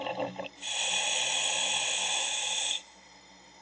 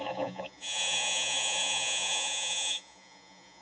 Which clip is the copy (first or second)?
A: second